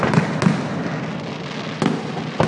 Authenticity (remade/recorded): recorded